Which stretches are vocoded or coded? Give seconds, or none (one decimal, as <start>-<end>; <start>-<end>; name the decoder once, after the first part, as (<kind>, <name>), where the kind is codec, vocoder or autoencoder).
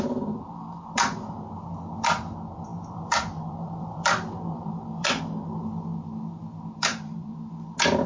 2.7-5.2 (vocoder, BigVGAN v2); 6.9-7.5